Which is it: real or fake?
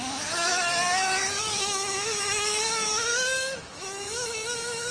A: fake